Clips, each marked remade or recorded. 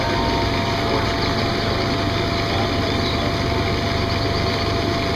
recorded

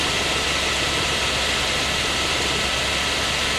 remade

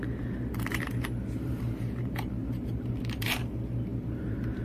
remade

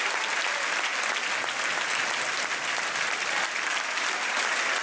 recorded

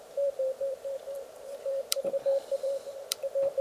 remade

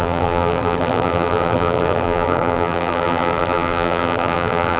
remade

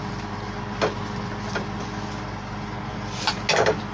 recorded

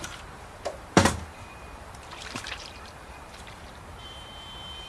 remade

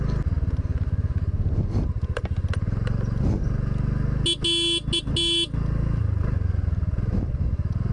recorded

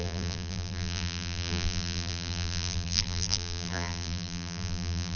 remade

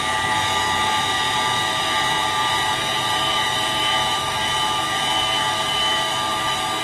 remade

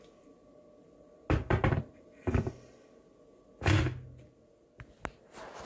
recorded